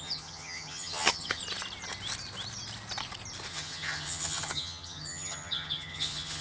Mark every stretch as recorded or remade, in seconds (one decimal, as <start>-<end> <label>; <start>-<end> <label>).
0.0-1.4 remade; 1.4-3.5 recorded; 3.5-6.4 remade